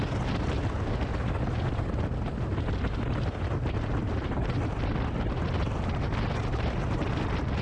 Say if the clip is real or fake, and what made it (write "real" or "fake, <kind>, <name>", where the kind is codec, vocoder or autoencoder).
real